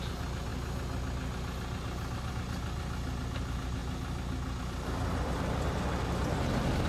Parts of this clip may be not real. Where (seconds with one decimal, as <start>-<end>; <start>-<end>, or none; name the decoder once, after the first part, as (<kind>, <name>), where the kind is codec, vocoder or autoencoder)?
none